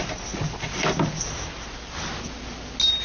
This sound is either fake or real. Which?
real